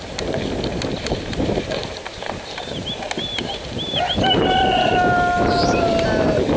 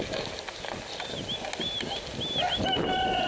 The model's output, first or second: first